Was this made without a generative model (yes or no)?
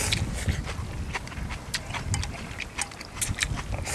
yes